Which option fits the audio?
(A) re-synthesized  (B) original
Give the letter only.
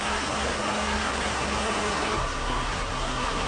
A